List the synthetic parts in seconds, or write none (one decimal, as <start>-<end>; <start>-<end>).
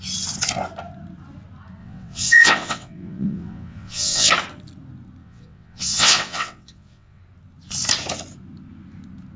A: 1.8-4.3; 5.2-7.2